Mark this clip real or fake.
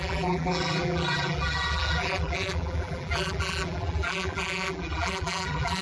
fake